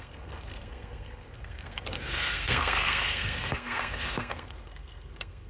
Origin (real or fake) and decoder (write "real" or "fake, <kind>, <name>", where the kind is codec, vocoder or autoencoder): fake, codec, SNAC